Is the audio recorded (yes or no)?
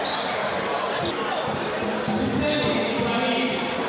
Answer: yes